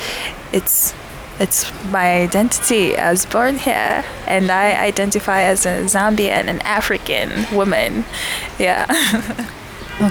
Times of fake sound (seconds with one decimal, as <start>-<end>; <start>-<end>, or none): 8.2-9.2